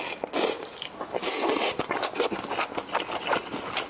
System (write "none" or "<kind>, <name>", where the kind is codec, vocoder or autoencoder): none